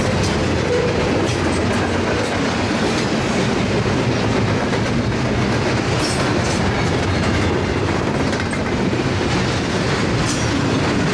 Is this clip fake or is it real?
real